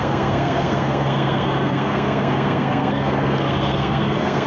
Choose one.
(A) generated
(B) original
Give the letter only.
A